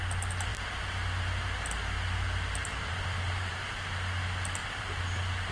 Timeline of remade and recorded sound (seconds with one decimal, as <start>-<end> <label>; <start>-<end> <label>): 0.0-2.6 recorded; 2.6-3.5 remade; 3.5-4.6 recorded; 4.6-5.5 remade

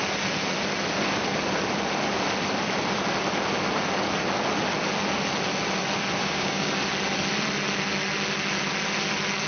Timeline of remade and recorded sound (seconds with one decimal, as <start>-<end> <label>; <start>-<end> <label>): 0.0-6.2 recorded; 6.2-6.7 remade; 6.7-9.5 recorded

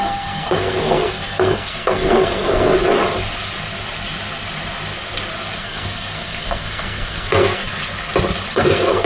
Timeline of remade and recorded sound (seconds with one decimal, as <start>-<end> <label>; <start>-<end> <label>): 0.0-2.7 remade; 2.7-5.5 recorded; 5.5-7.8 remade; 7.8-8.5 recorded; 8.5-9.1 remade